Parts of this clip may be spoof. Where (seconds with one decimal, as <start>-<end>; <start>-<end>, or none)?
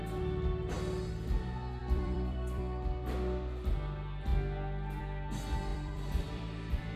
1.8-2.6; 5.7-7.0